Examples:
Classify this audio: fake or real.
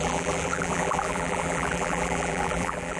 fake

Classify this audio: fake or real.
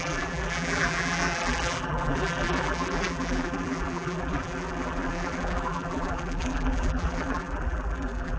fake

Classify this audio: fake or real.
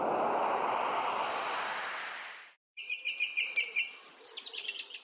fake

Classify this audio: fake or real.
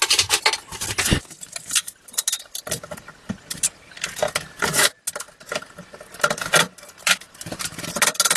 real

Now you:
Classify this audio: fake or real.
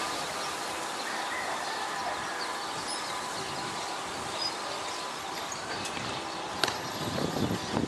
fake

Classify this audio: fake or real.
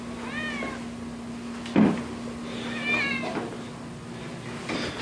real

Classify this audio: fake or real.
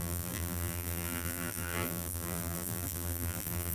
fake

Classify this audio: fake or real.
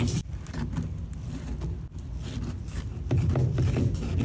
real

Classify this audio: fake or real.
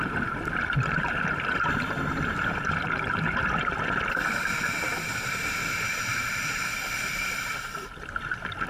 real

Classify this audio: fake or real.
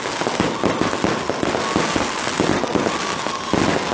real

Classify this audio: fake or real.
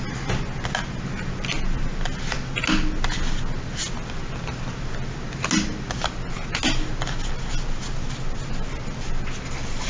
real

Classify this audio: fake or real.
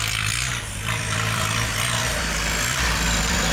fake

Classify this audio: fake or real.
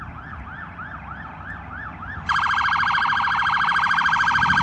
real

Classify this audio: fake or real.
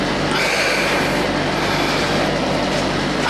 real